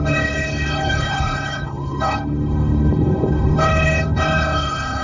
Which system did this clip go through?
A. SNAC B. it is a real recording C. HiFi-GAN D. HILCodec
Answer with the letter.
D